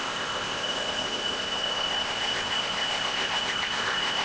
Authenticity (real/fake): fake